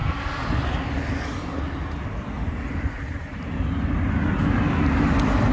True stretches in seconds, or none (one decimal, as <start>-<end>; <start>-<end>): 0.0-5.5